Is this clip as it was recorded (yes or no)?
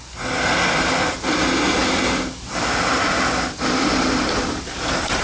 yes